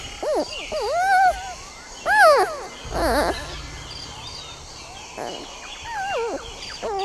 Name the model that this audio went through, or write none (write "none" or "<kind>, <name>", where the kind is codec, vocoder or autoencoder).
none